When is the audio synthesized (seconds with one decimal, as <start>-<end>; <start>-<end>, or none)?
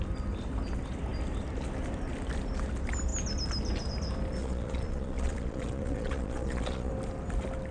4.4-6.9